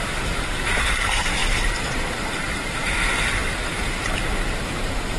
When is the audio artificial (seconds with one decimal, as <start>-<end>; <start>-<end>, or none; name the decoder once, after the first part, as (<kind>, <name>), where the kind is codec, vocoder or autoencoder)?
0.0-5.2 (vocoder, BigVGAN v2)